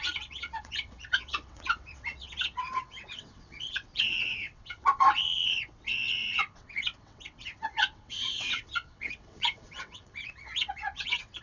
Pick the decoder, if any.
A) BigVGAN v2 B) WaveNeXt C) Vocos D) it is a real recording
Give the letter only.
B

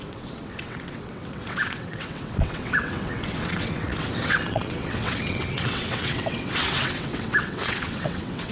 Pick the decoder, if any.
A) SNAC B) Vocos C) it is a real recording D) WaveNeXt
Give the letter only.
D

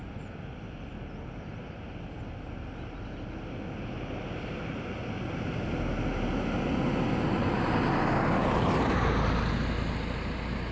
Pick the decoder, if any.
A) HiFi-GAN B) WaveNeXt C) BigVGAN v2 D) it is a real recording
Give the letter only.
D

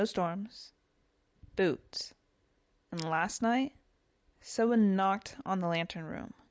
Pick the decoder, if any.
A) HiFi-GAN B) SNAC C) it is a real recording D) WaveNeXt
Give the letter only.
C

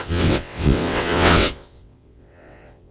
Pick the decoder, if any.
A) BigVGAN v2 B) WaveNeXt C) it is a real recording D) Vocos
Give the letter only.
B